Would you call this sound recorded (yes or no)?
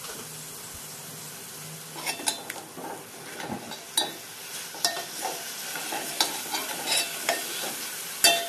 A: yes